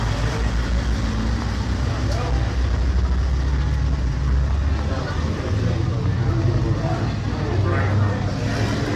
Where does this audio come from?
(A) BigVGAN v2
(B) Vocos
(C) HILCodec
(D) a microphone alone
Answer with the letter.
D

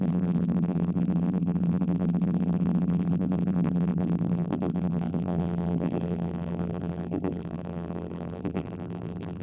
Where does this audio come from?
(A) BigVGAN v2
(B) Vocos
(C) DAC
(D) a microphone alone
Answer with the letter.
A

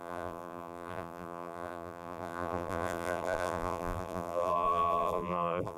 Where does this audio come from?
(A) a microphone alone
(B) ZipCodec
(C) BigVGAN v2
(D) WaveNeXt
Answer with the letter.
C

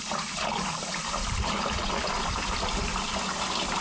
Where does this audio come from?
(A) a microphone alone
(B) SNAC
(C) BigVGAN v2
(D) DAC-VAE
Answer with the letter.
A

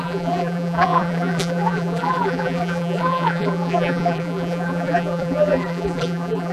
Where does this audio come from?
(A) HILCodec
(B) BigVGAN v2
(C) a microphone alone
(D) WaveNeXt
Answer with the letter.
B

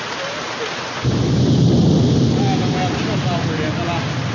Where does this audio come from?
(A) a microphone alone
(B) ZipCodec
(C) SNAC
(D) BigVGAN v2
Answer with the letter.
A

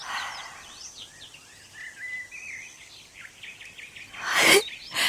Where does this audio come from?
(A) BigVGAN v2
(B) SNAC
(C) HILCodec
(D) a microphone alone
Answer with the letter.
D